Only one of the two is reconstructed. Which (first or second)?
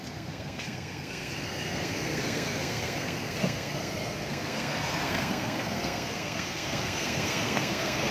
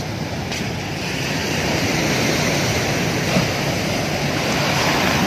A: first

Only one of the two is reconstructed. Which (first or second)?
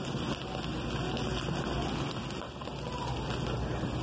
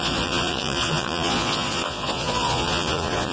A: second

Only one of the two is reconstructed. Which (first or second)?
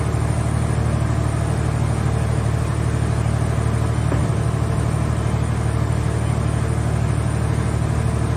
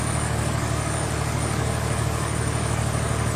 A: second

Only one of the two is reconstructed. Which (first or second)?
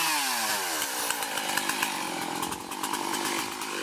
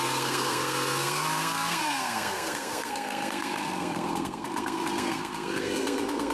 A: second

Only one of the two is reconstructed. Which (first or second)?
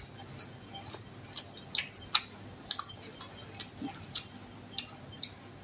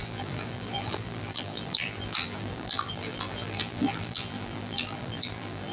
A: second